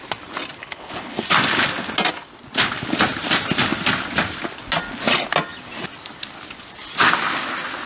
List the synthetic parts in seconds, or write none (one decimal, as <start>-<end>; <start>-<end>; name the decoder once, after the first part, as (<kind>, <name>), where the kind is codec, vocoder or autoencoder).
0.6-1.2 (codec, HILCodec)